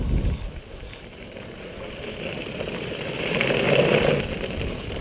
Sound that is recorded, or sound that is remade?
recorded